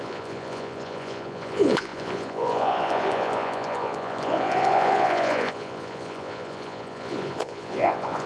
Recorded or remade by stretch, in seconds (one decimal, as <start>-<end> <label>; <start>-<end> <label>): 0.0-8.3 remade